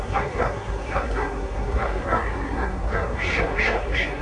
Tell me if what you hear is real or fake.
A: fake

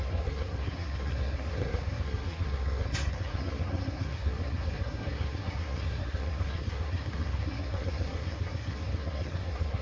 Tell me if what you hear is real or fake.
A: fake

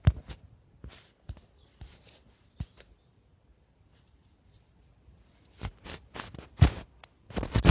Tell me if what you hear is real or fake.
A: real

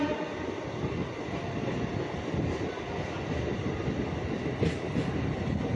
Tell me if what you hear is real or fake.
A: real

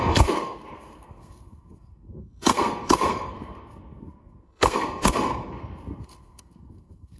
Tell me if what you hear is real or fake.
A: fake